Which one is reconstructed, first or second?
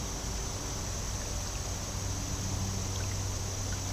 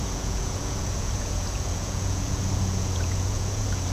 second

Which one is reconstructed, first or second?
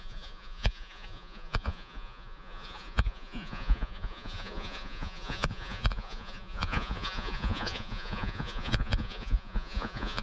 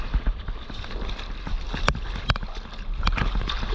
first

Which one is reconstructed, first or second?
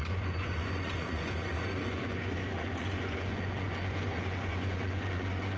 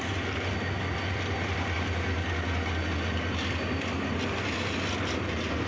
first